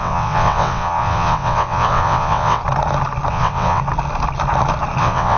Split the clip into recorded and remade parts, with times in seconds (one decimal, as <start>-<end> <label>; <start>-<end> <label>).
0.0-2.6 remade; 2.6-3.3 recorded; 3.3-3.8 remade; 3.8-5.0 recorded; 5.0-5.4 remade